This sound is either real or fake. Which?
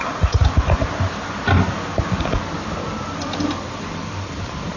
real